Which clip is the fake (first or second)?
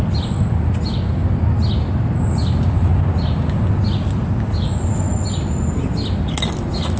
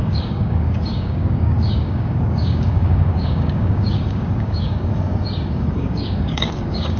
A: second